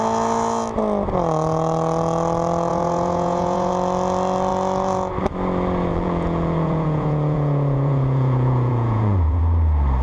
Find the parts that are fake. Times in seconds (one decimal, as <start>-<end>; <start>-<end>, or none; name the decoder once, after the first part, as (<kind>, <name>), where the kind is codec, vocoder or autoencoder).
2.7-3.7 (vocoder, Vocos); 5.9-9.4